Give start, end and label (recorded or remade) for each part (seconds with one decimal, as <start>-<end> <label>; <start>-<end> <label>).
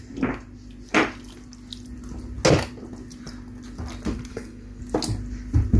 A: 0.0-4.3 recorded; 4.3-4.8 remade; 4.8-5.8 recorded